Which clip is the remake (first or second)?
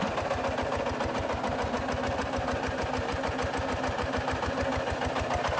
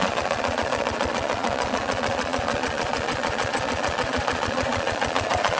second